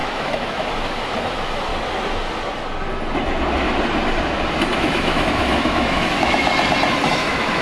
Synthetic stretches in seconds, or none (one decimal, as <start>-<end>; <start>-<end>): 0.0-1.7; 4.8-6.5; 7.1-7.6